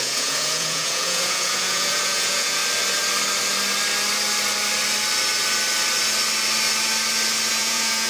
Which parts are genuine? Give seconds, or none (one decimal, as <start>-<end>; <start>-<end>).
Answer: 2.6-7.5